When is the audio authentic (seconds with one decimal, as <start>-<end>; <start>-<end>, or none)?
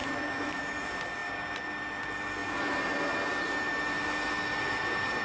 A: 0.6-5.2